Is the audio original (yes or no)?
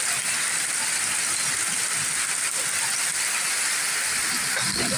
yes